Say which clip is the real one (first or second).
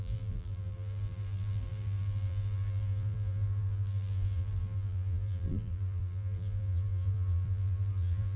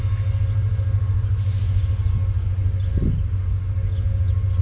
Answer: second